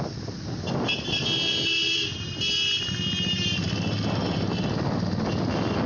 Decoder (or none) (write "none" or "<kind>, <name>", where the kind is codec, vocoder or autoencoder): none